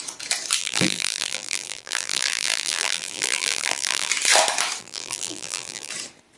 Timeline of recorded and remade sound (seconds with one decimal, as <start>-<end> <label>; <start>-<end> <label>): 0.0-0.6 recorded; 0.6-4.1 remade; 4.1-4.8 recorded; 4.8-5.9 remade; 5.9-6.4 recorded